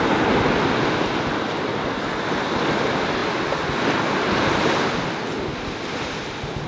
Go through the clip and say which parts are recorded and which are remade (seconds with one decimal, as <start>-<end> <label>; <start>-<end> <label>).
0.0-6.7 recorded

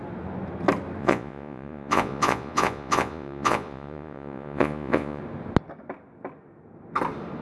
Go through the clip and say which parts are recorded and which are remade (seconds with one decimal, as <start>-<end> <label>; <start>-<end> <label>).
0.0-1.0 recorded; 1.0-5.2 remade; 5.2-7.4 recorded

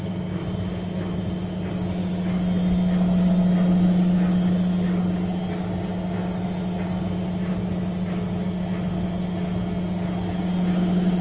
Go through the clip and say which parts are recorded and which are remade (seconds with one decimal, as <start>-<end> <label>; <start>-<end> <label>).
0.0-11.2 recorded

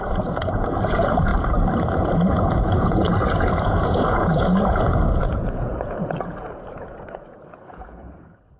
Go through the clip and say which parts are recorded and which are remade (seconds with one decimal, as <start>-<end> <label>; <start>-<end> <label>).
0.0-1.3 remade; 1.3-1.9 recorded; 1.9-8.6 remade